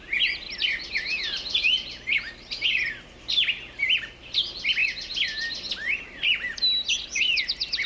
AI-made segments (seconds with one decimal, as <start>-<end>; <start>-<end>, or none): none